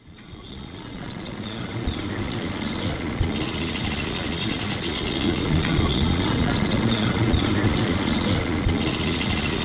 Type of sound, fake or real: fake